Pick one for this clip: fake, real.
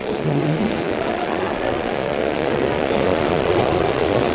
fake